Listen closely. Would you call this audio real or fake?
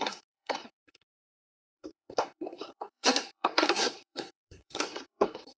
fake